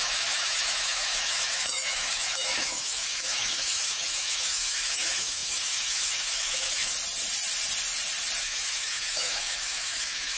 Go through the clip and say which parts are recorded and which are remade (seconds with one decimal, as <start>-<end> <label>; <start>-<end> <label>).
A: 0.0-6.9 remade; 6.9-8.4 recorded; 8.4-10.4 remade